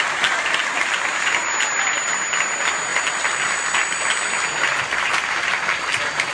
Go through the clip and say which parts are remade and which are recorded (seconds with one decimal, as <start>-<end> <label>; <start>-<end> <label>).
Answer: 0.0-6.3 recorded